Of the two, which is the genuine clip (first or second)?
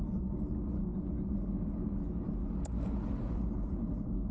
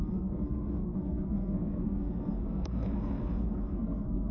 first